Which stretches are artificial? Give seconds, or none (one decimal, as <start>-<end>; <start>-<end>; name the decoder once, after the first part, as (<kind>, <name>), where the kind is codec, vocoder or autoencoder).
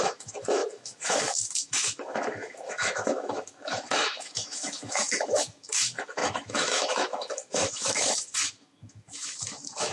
0.0-9.9 (autoencoder, DAC-VAE)